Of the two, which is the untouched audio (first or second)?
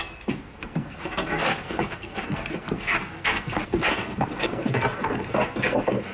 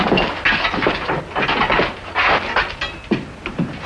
second